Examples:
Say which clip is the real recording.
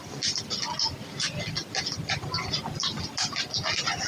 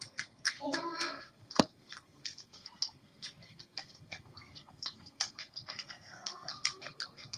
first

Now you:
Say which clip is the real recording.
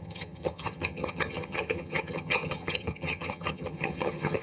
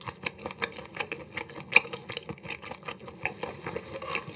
second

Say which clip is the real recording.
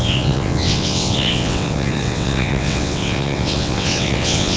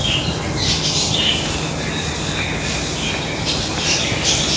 second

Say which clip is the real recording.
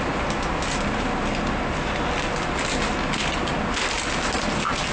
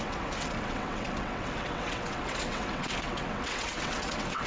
first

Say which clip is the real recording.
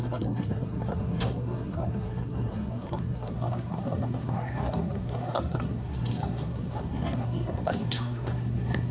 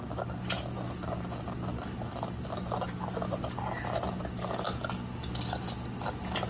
second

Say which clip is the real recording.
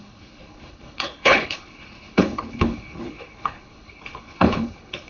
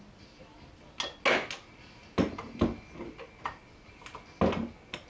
second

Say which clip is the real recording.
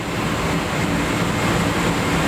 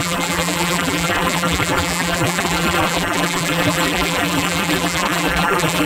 first